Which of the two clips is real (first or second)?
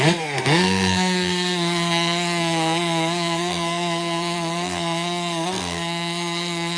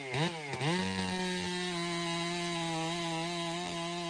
second